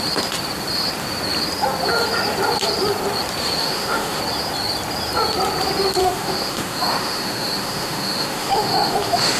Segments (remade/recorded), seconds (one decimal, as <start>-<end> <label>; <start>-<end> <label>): 0.0-3.6 recorded; 3.6-4.2 remade; 4.2-6.0 recorded; 6.0-9.4 remade